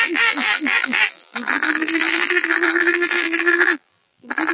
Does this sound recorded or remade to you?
remade